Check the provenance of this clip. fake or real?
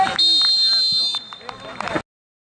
real